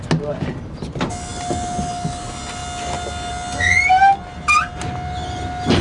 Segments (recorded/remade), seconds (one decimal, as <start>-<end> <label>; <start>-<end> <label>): 0.0-5.8 recorded